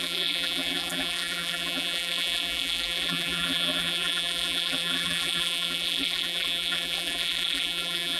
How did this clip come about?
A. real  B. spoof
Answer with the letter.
B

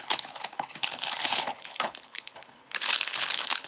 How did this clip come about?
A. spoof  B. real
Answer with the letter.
A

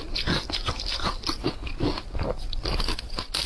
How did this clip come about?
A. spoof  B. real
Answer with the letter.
B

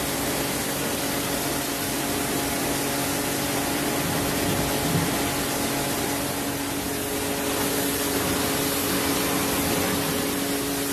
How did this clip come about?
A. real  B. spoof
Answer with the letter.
A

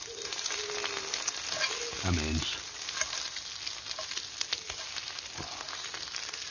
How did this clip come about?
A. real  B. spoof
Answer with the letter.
A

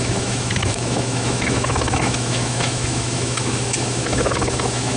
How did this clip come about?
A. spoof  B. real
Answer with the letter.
A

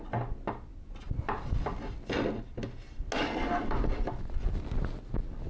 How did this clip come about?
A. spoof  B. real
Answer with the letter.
B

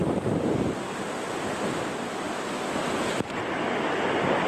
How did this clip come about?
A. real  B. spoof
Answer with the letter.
A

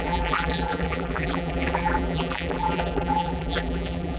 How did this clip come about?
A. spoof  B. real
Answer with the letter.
A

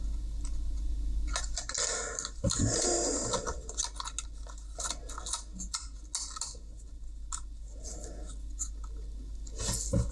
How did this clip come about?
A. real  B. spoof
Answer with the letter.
A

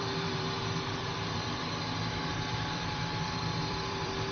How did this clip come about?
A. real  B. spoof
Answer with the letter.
B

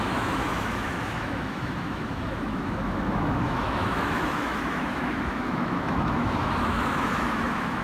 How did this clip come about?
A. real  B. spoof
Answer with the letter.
B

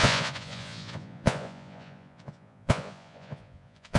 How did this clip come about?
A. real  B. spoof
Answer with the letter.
B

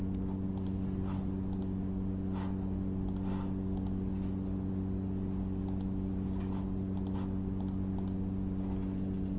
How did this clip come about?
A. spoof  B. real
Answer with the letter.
B